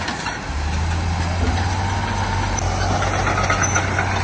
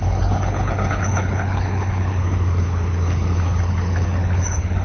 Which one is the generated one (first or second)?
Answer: second